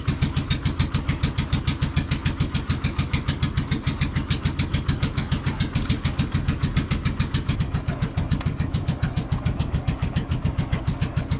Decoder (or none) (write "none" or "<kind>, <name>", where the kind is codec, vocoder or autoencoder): codec, DAC